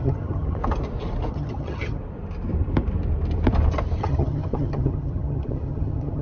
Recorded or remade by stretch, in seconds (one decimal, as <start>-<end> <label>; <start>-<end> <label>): 0.0-0.6 remade; 0.6-1.3 recorded; 1.3-2.0 remade; 2.0-4.0 recorded; 4.0-6.2 remade